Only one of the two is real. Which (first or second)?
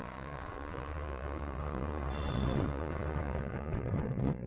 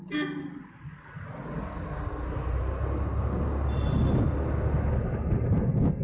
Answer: second